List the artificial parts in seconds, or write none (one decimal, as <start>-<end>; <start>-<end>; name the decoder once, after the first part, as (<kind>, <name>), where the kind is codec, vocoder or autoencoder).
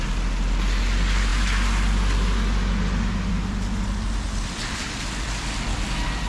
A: none